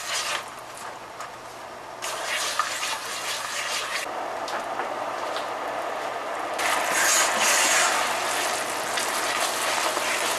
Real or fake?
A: real